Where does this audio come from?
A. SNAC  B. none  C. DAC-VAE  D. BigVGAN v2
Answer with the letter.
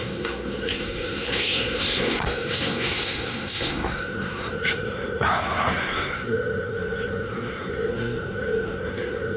A